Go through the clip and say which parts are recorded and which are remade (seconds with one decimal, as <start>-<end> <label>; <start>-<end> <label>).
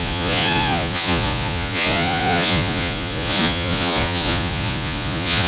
0.0-5.5 remade